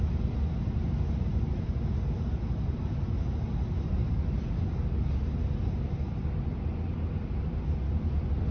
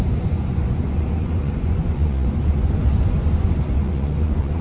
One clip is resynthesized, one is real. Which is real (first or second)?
first